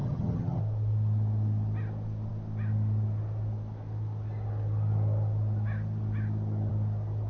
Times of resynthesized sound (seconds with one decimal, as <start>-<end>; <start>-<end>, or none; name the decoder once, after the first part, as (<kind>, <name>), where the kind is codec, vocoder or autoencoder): 0.0-0.6 (vocoder, HiFi-GAN)